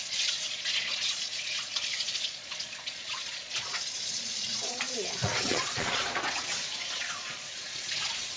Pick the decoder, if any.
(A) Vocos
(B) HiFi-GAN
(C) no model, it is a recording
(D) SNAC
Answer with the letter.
A